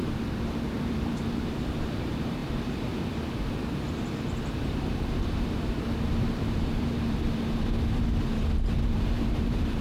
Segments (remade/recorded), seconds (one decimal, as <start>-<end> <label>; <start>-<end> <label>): 0.0-2.4 remade; 2.4-3.5 recorded; 3.5-9.8 remade